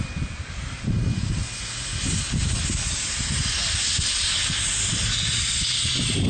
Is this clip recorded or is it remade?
recorded